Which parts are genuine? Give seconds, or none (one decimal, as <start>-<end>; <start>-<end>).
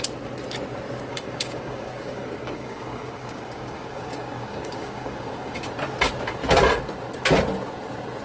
0.0-1.1; 5.7-8.2